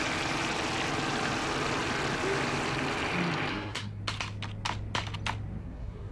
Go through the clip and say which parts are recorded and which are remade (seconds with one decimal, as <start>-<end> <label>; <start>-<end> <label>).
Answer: 0.0-3.5 recorded; 3.5-4.0 remade; 4.0-5.6 recorded; 5.6-6.1 remade

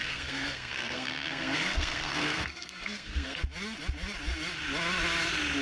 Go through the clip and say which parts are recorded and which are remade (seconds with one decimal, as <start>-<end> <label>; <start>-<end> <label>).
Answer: 0.0-3.4 remade; 3.4-5.6 recorded

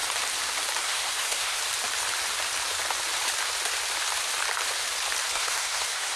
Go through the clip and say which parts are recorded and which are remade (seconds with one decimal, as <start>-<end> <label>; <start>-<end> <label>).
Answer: 0.0-0.8 recorded; 0.8-1.6 remade; 1.6-5.3 recorded; 5.3-6.2 remade

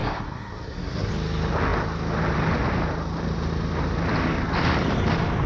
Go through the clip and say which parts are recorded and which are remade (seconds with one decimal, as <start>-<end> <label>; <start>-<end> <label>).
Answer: 0.0-1.1 remade; 1.1-5.5 recorded

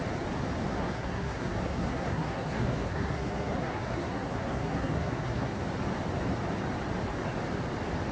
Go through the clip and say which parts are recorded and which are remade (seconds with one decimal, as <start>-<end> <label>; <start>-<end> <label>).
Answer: 0.0-0.7 recorded; 0.7-5.6 remade; 5.6-8.1 recorded

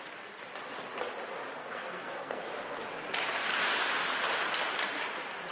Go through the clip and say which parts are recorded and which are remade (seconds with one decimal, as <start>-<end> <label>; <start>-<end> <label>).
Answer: 0.0-1.6 recorded; 1.6-2.5 remade; 2.5-5.5 recorded

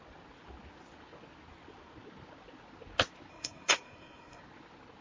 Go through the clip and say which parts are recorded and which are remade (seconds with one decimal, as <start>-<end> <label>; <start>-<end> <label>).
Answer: 0.0-3.3 recorded; 3.3-4.4 remade; 4.4-5.0 recorded

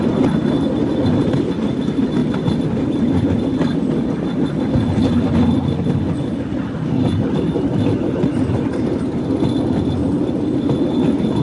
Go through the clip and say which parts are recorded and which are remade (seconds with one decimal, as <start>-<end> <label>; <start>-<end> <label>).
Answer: 0.0-11.4 recorded